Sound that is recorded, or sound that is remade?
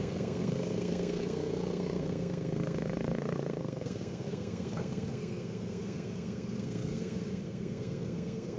remade